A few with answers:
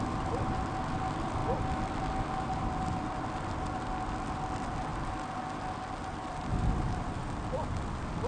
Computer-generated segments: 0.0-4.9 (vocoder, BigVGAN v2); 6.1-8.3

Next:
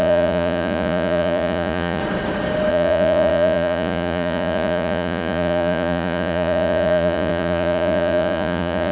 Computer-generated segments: 0.0-2.0 (vocoder, Vocos); 2.7-8.9

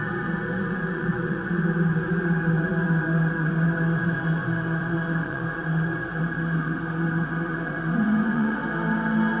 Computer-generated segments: 0.0-8.6 (vocoder, Vocos)

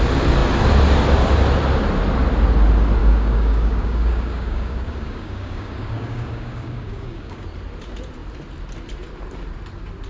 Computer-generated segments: 3.0-7.4 (codec, DAC)